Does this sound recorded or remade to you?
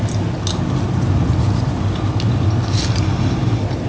recorded